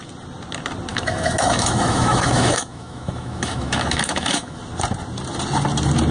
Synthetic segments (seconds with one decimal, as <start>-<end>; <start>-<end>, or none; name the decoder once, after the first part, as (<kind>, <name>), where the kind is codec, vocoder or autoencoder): 0.9-4.6 (autoencoder, DAC-VAE)